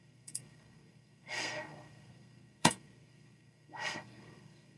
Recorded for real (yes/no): no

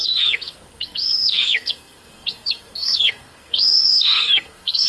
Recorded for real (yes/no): no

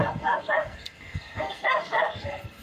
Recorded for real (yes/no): no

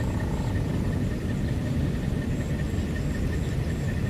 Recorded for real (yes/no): yes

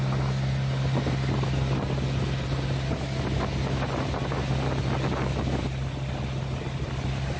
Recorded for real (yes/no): yes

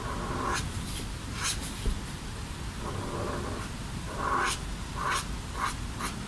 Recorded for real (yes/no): yes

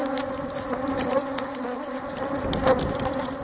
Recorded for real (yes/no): yes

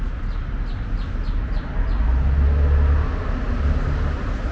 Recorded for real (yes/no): yes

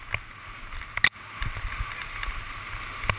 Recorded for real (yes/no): yes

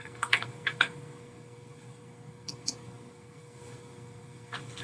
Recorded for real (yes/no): no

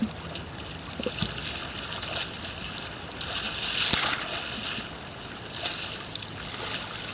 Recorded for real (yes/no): yes